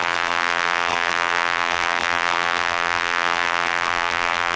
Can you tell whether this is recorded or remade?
remade